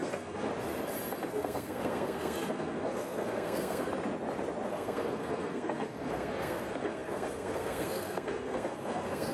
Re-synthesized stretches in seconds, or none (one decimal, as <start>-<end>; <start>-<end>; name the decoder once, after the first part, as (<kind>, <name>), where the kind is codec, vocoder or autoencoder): 0.0-0.5 (codec, SNAC); 1.3-3.9; 4.7-9.3